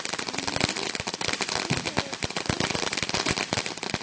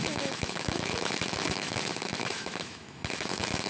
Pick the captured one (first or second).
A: first